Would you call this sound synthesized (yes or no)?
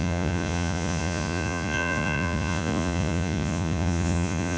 yes